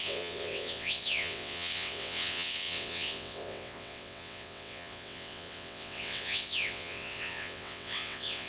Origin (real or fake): fake